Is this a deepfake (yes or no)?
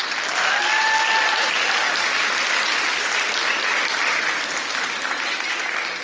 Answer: no